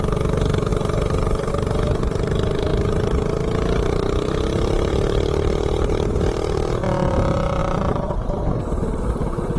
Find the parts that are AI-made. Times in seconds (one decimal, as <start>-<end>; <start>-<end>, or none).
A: 0.7-1.5